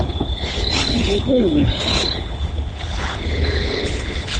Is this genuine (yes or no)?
no